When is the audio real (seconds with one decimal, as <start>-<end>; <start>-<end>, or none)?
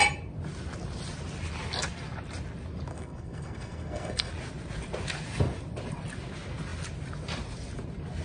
0.0-2.9; 4.3-8.2